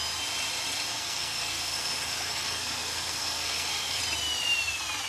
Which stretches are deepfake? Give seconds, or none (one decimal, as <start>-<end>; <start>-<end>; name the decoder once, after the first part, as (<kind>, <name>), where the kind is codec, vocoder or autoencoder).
0.9-4.0 (codec, SNAC)